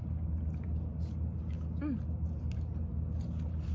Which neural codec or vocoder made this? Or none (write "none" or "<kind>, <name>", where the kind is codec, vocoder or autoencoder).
none